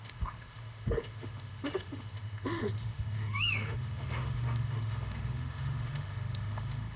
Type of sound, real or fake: fake